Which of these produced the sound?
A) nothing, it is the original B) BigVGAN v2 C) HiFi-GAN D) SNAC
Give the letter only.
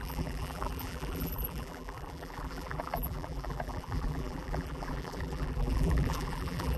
B